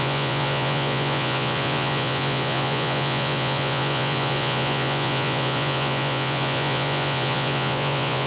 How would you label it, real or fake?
fake